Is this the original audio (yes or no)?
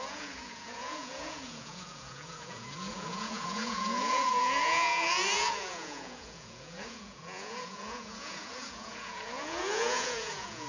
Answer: no